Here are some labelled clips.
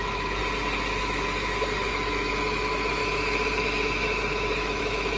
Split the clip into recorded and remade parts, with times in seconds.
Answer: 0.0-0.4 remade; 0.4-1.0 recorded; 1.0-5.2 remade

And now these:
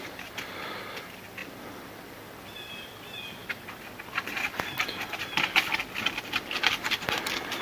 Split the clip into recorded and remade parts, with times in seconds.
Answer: 0.0-1.4 recorded; 1.4-2.4 remade; 2.4-7.6 recorded

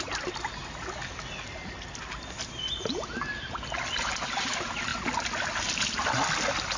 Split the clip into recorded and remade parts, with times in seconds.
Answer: 0.0-6.8 recorded

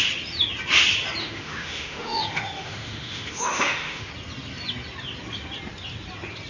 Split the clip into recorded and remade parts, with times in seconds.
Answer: 0.0-1.2 recorded; 1.2-4.1 remade; 4.1-6.5 recorded